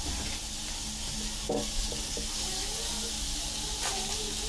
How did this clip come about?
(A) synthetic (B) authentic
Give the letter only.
B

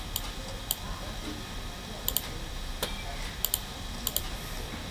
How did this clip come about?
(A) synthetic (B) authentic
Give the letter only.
B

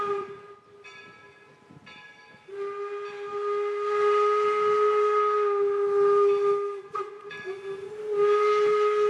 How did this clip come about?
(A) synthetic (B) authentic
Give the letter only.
B